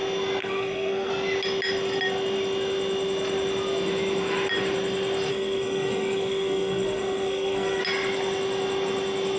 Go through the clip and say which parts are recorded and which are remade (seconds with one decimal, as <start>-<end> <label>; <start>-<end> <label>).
0.0-0.4 recorded; 0.4-1.1 remade; 1.1-5.3 recorded; 5.3-7.8 remade; 7.8-9.4 recorded